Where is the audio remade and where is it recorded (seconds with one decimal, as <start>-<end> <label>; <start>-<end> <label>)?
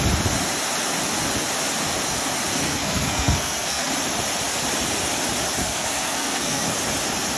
0.0-2.5 recorded; 2.5-3.9 remade; 3.9-5.6 recorded; 5.6-6.7 remade; 6.7-7.4 recorded